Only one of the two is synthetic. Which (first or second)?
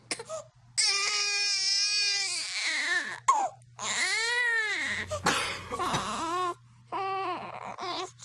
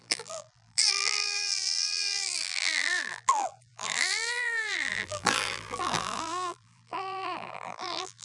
second